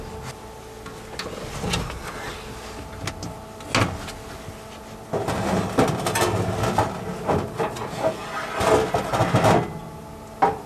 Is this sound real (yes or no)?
yes